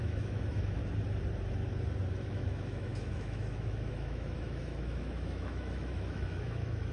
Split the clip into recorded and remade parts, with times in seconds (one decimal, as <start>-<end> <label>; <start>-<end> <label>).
0.0-0.8 remade; 0.8-2.1 recorded; 2.1-6.9 remade